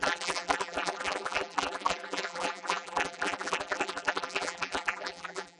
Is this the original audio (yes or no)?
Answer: no